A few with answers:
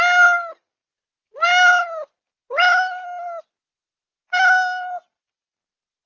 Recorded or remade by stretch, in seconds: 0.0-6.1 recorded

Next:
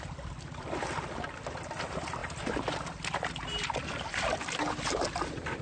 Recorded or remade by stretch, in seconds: 0.0-5.6 recorded

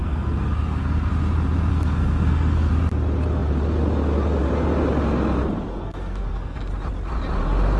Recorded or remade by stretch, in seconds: 0.0-1.1 remade; 1.1-1.7 recorded; 1.7-2.7 remade; 2.7-5.7 recorded; 5.7-6.7 remade; 6.7-7.8 recorded